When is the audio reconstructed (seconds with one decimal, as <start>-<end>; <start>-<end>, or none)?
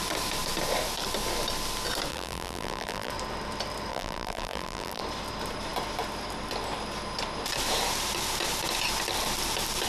2.1-3.1; 3.9-5.0